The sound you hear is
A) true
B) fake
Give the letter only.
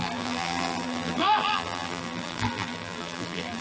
B